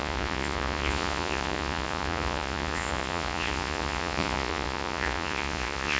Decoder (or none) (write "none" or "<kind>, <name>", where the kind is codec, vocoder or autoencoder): vocoder, Vocos